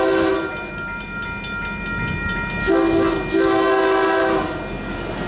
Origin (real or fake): real